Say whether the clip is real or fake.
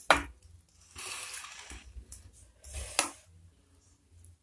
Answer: real